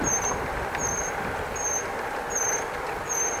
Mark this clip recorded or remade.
recorded